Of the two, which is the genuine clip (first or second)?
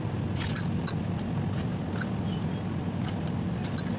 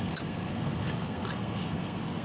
first